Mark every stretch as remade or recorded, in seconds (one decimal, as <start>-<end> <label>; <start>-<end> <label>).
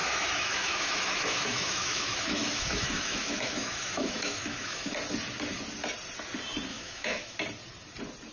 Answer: 0.0-4.9 remade; 4.9-6.7 recorded; 6.7-7.4 remade; 7.4-8.3 recorded